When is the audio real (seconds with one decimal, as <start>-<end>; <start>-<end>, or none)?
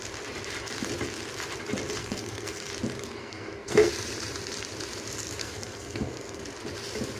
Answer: 0.0-2.0; 2.7-3.2; 3.9-5.4; 6.4-7.2